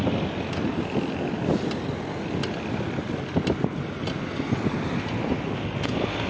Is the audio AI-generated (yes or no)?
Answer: no